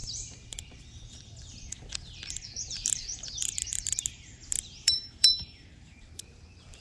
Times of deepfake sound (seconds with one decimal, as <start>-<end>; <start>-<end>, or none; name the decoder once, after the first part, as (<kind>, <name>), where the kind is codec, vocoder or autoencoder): 0.0-6.8 (vocoder, BigVGAN v2)